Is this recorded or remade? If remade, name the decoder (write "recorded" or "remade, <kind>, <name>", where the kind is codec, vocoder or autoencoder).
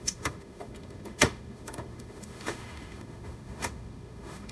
remade, autoencoder, DAC-VAE